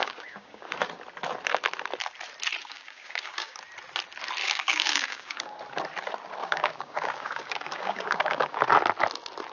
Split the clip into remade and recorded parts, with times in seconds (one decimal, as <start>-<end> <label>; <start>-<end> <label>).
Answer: 0.0-0.7 remade; 0.7-2.6 recorded; 2.6-3.6 remade; 3.6-4.4 recorded; 4.4-5.6 remade; 5.6-6.4 recorded; 6.4-8.6 remade; 8.6-9.5 recorded